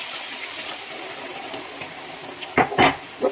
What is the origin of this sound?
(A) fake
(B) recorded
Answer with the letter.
B